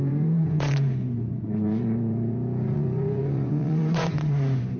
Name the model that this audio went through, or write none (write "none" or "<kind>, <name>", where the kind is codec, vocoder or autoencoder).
vocoder, Vocos